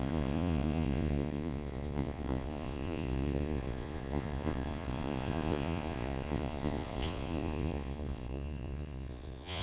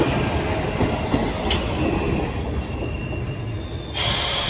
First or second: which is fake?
first